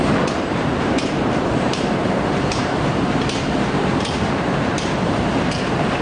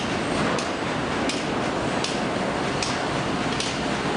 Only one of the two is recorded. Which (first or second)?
second